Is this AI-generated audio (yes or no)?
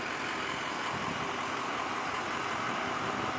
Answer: no